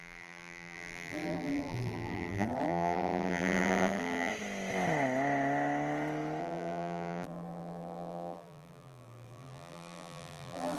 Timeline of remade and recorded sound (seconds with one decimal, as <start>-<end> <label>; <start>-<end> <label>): 0.0-4.3 remade; 4.3-6.4 recorded; 6.4-10.8 remade